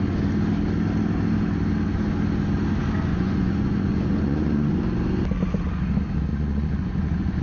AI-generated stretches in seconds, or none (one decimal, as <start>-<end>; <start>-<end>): 3.1-4.8; 6.3-7.4